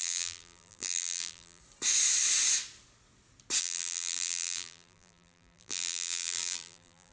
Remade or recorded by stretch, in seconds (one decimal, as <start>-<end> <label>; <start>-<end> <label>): 0.0-1.6 remade; 1.6-3.6 recorded; 3.6-7.1 remade